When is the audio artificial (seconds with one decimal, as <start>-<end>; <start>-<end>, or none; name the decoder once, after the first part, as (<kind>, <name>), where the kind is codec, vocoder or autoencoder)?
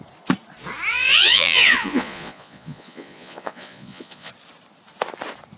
0.9-4.3 (vocoder, Vocos)